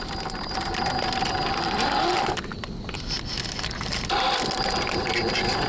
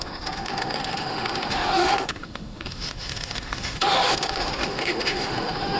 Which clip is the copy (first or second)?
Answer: second